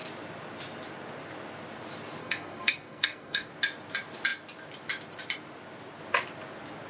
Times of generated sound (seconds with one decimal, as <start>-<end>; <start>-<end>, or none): 2.2-3.5